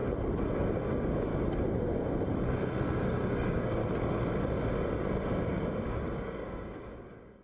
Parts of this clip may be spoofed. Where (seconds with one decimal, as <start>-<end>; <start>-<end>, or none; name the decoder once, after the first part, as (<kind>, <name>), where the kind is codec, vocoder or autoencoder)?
0.5-1.3 (codec, DAC); 3.0-3.8; 5.5-7.4